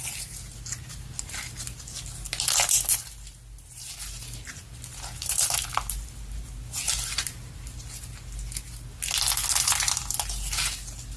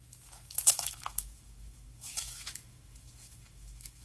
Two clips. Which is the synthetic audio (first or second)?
second